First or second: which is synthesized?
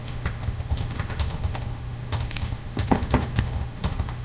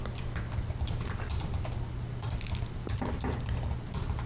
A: first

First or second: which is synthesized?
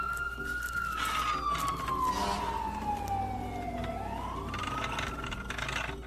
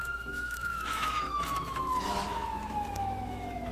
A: second